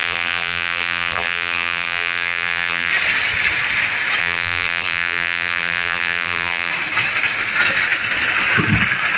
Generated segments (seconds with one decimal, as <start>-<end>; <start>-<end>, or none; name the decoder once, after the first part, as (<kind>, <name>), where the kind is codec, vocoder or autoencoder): 0.0-2.9 (vocoder, BigVGAN v2); 4.2-6.7